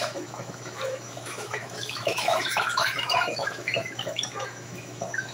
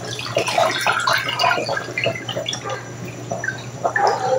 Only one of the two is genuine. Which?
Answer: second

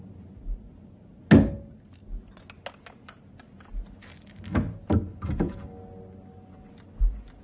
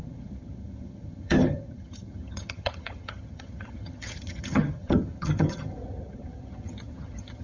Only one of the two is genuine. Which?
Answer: first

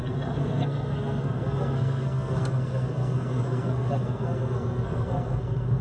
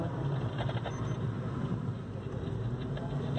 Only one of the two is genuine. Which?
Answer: second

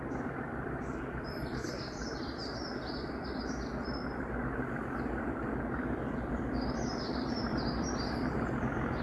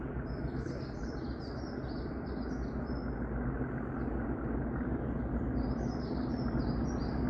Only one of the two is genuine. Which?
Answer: second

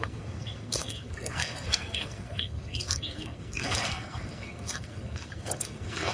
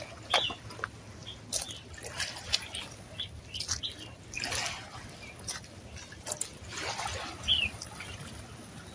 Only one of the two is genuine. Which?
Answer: second